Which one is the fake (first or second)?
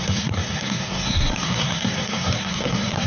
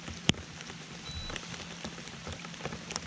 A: first